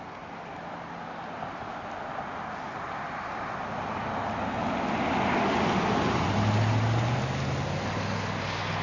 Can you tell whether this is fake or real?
real